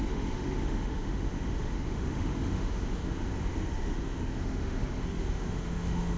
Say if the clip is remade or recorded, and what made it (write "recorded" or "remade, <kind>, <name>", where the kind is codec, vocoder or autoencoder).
remade, autoencoder, DAC-VAE